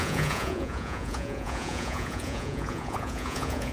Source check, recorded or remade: remade